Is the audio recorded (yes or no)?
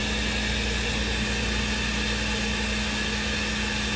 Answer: yes